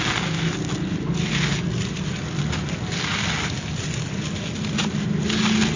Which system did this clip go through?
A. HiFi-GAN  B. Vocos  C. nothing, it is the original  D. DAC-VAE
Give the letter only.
C